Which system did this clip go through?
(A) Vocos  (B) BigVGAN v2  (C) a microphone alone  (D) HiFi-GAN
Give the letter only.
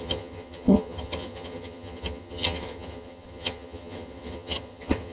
D